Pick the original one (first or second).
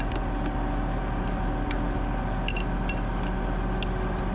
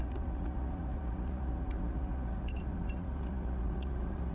first